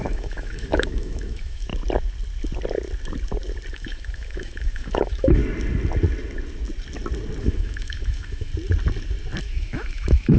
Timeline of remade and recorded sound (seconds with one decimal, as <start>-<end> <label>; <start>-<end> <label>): 0.0-1.7 remade; 1.7-3.7 recorded; 3.7-5.4 remade; 5.4-7.4 recorded; 7.4-8.5 remade; 8.5-9.4 recorded; 9.4-10.4 remade